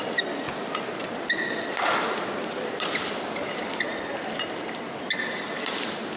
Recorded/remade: recorded